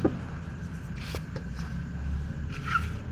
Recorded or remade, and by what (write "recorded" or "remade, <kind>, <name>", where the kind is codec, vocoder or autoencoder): recorded